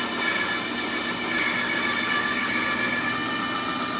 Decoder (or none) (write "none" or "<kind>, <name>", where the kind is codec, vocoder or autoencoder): none